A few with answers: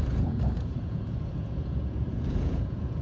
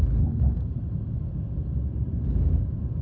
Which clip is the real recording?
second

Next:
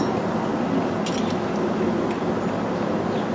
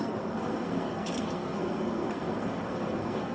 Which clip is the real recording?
first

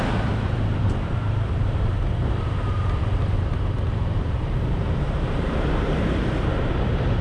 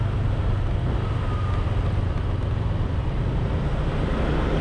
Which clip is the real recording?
second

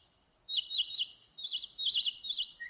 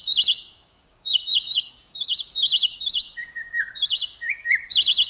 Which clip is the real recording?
first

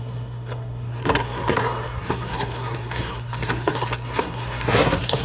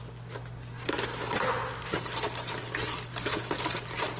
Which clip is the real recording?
second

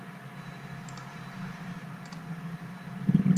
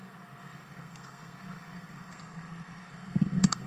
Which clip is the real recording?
first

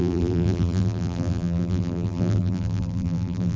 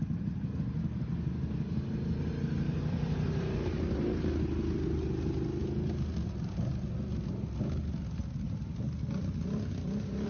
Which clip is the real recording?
second